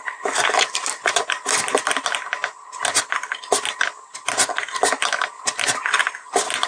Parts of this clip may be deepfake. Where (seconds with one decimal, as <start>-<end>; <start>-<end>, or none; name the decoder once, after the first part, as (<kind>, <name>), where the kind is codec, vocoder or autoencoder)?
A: none